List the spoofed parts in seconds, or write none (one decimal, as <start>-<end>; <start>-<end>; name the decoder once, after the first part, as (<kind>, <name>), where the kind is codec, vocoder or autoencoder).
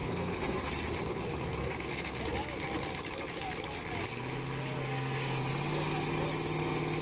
0.0-0.7 (codec, SNAC); 1.6-2.2; 4.8-5.4